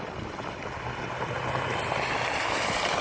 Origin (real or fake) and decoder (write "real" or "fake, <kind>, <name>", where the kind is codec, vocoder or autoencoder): real